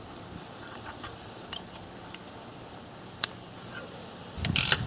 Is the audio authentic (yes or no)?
no